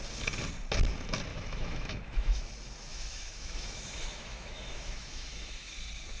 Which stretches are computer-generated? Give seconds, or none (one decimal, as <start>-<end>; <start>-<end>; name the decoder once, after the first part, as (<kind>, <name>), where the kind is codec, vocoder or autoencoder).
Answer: 1.3-2.5 (autoencoder, DAC-VAE); 2.9-5.7